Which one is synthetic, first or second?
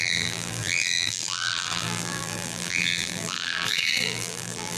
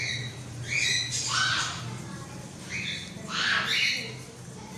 first